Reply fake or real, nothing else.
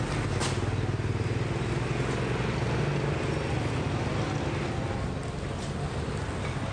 real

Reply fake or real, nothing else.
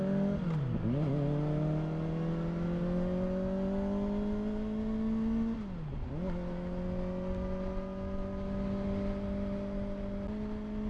real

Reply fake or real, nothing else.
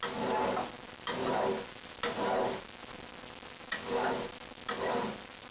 real